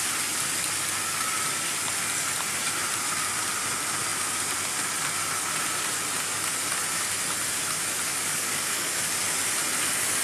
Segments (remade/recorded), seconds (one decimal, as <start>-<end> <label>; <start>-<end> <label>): 0.0-8.1 recorded; 8.1-9.0 remade; 9.0-10.2 recorded

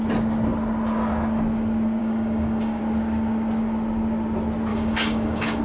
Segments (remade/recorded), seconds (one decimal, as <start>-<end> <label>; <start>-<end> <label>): 0.0-2.0 recorded; 2.0-2.8 remade; 2.8-4.7 recorded; 4.7-5.6 remade